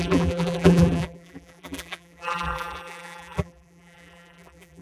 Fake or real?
fake